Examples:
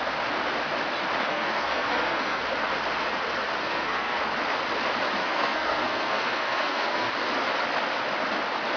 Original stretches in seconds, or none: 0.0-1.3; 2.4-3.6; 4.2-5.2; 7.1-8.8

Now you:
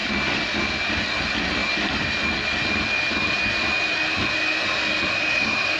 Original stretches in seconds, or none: 0.0-1.2; 1.6-5.1

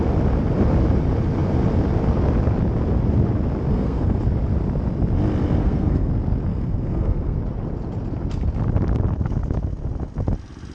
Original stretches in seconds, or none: 0.0-3.7; 4.2-5.6; 6.1-6.5; 7.4-10.7

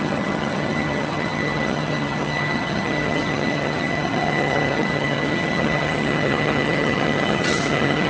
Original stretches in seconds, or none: none